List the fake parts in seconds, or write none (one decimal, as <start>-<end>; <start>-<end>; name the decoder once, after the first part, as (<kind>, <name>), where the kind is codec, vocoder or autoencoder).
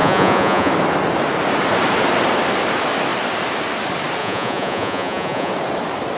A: 0.0-0.7 (vocoder, Vocos); 4.2-5.5